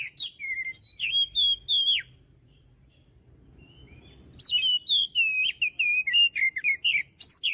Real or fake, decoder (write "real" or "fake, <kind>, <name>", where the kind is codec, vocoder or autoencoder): real